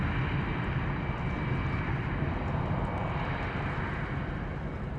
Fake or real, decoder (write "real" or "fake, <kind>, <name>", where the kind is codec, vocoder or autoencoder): real